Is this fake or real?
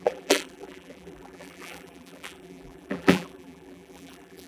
fake